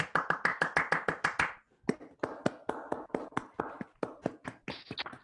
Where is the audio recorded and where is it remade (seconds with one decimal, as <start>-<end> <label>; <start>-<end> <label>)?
0.0-5.2 recorded